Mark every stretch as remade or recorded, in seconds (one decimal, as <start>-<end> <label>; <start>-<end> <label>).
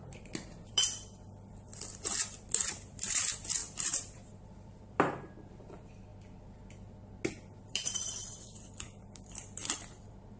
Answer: 0.0-1.7 remade; 1.7-2.4 recorded; 2.4-6.1 remade; 6.1-7.6 recorded; 7.6-10.4 remade